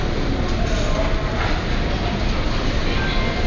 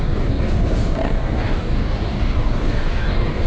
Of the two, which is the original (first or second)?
first